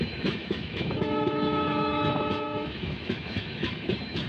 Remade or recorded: remade